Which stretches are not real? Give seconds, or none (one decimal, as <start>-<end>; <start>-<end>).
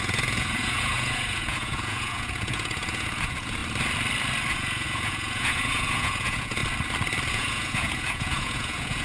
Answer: 0.0-3.6; 4.5-6.6; 7.3-9.0